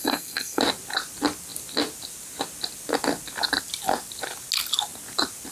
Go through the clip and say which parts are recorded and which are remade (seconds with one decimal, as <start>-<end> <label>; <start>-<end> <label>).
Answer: 0.0-0.6 remade; 0.6-5.5 recorded